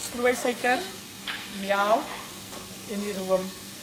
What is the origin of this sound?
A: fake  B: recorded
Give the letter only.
A